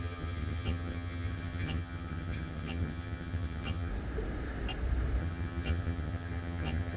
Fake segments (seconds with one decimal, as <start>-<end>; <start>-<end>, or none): 0.0-3.9; 5.2-7.0